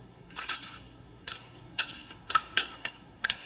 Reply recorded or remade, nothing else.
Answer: remade